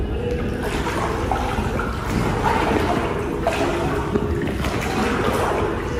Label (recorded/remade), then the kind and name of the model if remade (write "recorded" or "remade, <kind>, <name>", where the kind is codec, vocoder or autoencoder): recorded